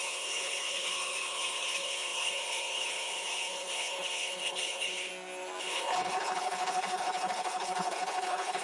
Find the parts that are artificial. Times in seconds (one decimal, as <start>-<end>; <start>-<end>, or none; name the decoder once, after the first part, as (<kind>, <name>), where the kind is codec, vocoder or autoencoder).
0.0-5.1 (codec, HILCodec); 5.6-8.6